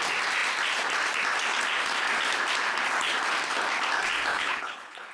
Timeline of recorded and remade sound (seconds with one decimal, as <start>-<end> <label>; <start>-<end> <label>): 0.0-4.3 recorded; 4.3-5.1 remade